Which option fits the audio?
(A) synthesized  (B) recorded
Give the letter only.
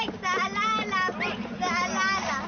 B